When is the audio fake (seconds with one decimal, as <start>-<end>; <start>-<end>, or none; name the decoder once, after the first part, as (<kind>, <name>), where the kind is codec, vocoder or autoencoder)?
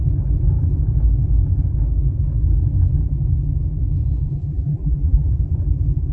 4.3-5.3 (vocoder, BigVGAN v2)